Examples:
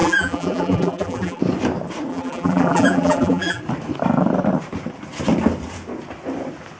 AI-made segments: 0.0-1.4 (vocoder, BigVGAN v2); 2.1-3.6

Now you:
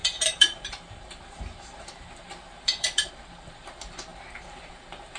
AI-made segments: 0.0-3.1 (vocoder, BigVGAN v2); 4.1-4.7

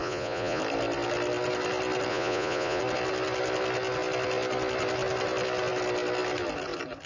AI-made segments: 0.0-0.6 (vocoder, Vocos); 2.1-2.8

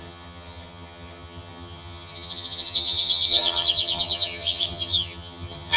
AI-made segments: 0.0-5.8 (vocoder, HiFi-GAN)

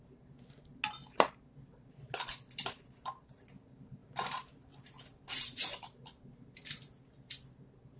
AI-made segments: none